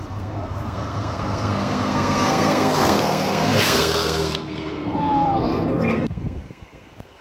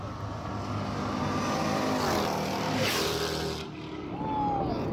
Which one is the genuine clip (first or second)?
second